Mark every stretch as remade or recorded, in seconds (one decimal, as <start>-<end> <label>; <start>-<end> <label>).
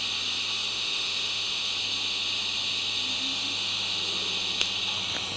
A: 0.0-0.7 recorded; 0.7-1.6 remade; 1.6-3.1 recorded; 3.1-4.0 remade; 4.0-5.4 recorded